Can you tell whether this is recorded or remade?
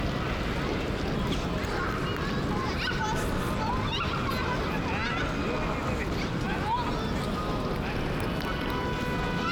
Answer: recorded